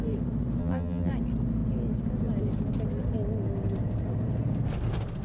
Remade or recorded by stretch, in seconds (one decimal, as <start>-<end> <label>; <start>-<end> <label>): 0.0-0.6 recorded; 0.6-1.1 remade; 1.1-5.2 recorded